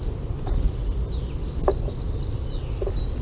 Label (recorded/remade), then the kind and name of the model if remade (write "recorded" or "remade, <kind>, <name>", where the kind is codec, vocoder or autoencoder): recorded